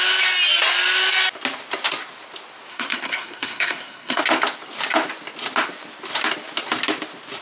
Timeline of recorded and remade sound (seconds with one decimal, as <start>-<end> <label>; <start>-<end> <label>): 0.0-2.7 recorded; 2.7-4.2 remade; 4.2-7.4 recorded